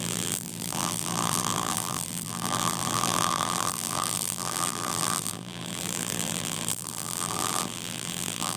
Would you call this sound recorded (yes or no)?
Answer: no